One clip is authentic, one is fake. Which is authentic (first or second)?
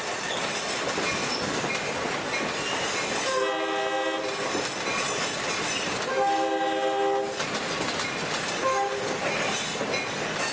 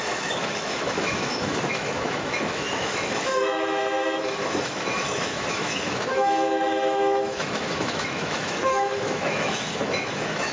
first